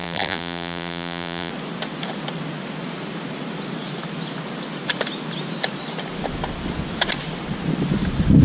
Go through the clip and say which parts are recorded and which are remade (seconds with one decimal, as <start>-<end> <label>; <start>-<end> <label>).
0.0-1.5 remade; 1.5-8.4 recorded